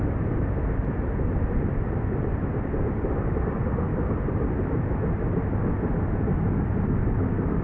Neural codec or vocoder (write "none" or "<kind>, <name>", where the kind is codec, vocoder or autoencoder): none